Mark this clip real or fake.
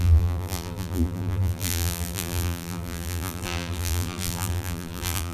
fake